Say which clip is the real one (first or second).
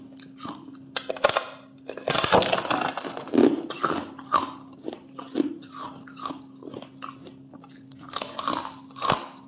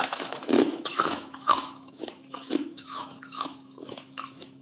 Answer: first